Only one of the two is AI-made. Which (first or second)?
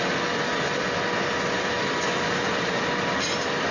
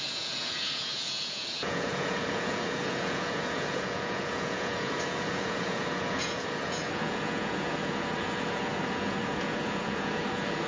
second